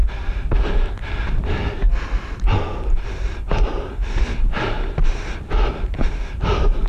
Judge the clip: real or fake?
real